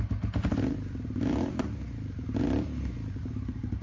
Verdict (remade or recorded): recorded